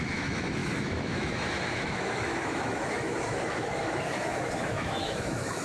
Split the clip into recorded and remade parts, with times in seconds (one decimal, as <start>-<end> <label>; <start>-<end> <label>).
0.0-5.6 remade